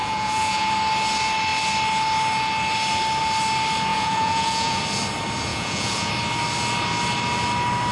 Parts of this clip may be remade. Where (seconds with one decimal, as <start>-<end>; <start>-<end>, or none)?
0.0-0.7; 3.9-4.8; 5.5-6.1